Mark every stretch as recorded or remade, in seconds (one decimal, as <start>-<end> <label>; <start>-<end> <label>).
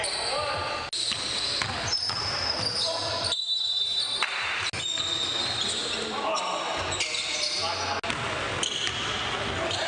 0.0-9.9 recorded